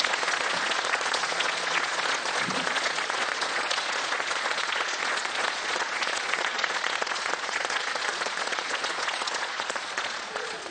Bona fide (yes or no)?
no